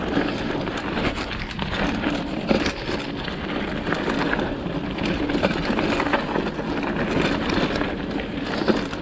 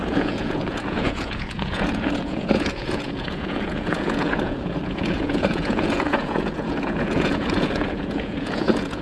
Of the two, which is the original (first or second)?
first